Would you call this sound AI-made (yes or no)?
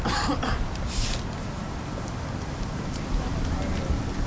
no